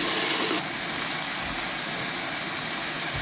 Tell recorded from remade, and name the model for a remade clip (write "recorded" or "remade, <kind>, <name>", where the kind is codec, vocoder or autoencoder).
recorded